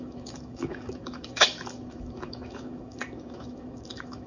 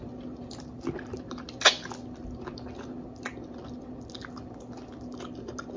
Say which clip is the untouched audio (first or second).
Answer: second